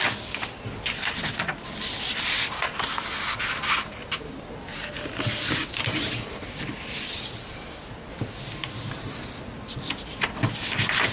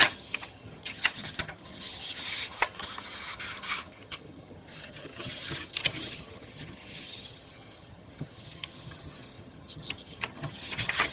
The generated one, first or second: second